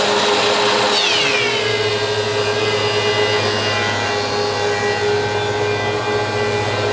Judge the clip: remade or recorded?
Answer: recorded